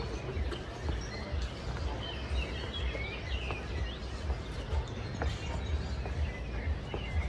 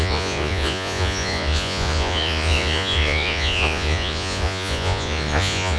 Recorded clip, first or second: first